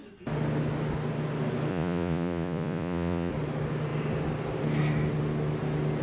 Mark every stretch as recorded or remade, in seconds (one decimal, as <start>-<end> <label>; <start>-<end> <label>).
0.0-1.7 recorded; 1.7-3.3 remade; 3.3-6.0 recorded